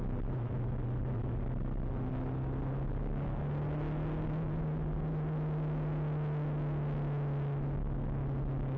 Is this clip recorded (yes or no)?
yes